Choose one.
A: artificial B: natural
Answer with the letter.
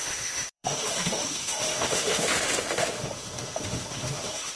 A